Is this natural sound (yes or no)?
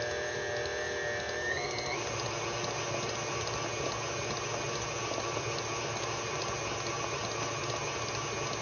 yes